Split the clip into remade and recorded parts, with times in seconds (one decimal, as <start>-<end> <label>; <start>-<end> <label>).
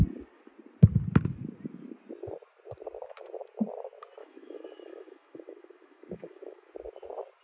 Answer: 0.0-4.2 recorded; 4.2-6.7 remade; 6.7-7.4 recorded